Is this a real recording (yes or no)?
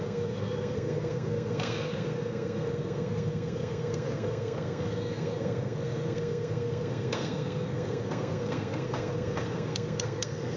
no